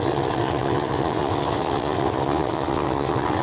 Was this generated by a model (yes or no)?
yes